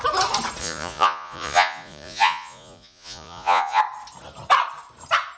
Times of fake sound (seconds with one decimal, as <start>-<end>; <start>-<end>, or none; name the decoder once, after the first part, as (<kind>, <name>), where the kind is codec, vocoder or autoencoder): 0.6-3.8 (vocoder, Vocos)

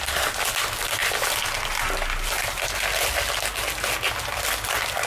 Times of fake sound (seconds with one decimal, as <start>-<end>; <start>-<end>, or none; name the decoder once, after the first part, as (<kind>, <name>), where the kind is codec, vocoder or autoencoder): none